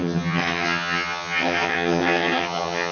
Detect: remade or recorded remade